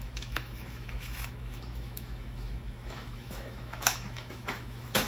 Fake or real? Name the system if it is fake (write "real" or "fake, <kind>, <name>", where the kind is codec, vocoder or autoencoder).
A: fake, autoencoder, DAC-VAE